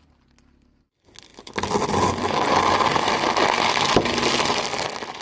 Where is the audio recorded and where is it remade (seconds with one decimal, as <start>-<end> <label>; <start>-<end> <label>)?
0.0-5.2 recorded